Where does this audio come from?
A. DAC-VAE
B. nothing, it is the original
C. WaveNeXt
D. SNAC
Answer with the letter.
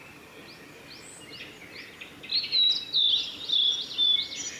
B